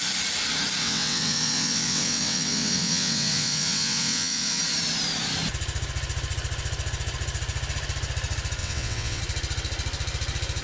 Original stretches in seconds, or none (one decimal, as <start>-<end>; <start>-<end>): 0.0-0.8; 4.6-8.6; 9.2-10.6